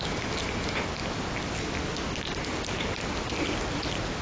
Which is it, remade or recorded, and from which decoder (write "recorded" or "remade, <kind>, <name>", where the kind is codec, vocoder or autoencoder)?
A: recorded